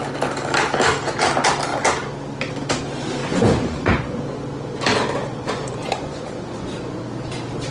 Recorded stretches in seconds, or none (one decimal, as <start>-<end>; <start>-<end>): 0.0-3.2; 4.2-5.2; 7.0-7.7